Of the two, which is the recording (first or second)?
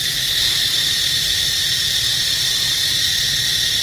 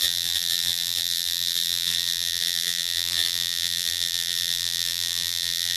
first